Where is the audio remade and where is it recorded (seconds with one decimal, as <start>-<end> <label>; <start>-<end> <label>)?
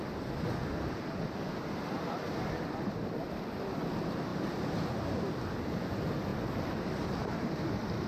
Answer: 0.0-6.3 recorded; 6.3-7.5 remade; 7.5-8.1 recorded